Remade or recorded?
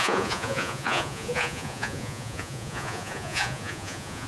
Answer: remade